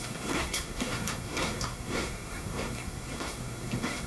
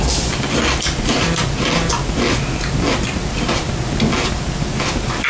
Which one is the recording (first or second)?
second